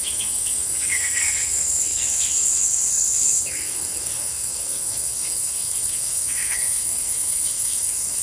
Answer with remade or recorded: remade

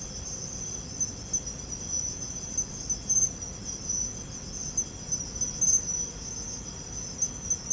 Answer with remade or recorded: recorded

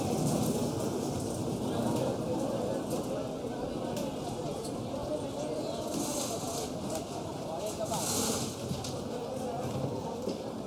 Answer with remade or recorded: recorded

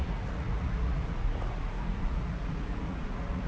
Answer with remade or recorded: remade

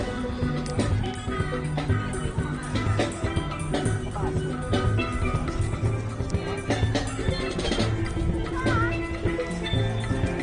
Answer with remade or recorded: recorded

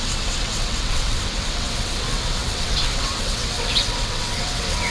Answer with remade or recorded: remade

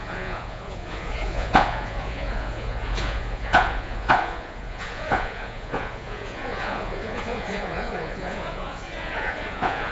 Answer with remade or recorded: remade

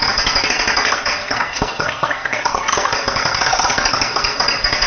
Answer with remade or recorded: remade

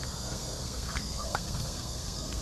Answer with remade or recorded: remade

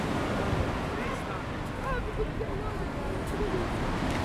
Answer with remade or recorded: recorded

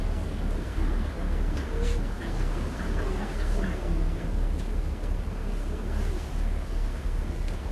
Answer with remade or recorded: remade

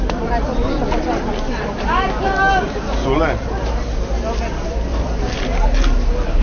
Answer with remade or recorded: recorded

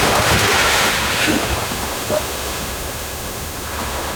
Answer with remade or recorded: remade